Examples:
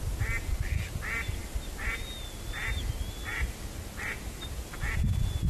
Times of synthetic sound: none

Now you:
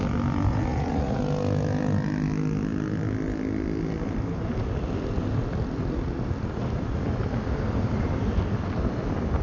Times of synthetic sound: 0.5-1.2 (vocoder, Vocos)

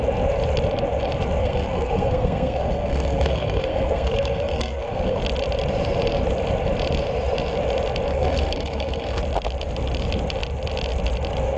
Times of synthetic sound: 1.4-5.2 (codec, SNAC); 8.1-9.2

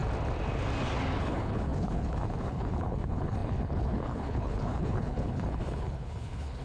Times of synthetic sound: 1.2-6.6 (codec, HILCodec)

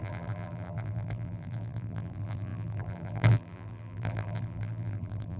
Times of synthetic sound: 0.0-5.4 (vocoder, BigVGAN v2)

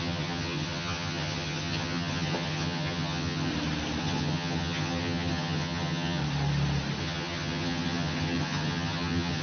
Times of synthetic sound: 0.0-3.5 (vocoder, HiFi-GAN); 4.0-6.2; 7.0-9.4

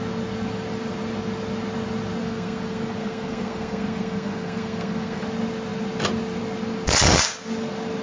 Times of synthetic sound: 2.2-5.2 (codec, SNAC)